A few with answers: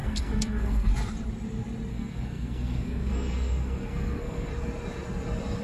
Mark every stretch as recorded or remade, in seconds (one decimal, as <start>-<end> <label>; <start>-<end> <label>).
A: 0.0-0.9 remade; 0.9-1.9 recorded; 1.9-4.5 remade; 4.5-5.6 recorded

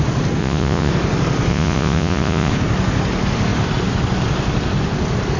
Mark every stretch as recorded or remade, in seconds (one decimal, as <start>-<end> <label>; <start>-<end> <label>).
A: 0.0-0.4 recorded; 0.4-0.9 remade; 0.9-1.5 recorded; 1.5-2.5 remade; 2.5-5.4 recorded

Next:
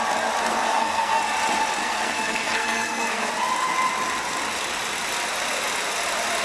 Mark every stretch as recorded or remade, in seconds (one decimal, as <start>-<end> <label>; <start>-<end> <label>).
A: 0.0-0.4 recorded; 0.4-1.2 remade; 1.2-1.8 recorded; 1.8-3.3 remade; 3.3-6.4 recorded